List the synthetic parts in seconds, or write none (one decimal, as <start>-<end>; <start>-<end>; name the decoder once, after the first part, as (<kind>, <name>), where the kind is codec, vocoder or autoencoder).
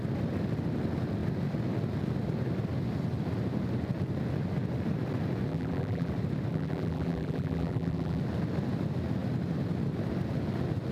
5.5-6.1 (vocoder, BigVGAN v2); 6.5-8.2